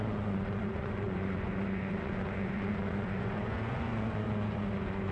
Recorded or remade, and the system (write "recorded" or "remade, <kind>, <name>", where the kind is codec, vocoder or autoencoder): remade, vocoder, Vocos